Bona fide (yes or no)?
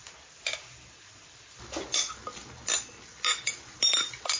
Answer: yes